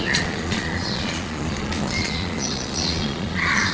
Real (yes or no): no